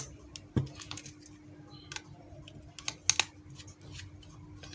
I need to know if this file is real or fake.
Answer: real